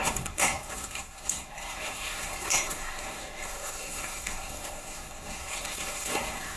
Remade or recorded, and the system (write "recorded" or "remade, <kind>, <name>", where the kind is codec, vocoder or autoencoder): remade, codec, SNAC